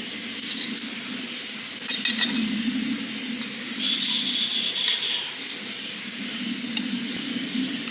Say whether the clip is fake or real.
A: real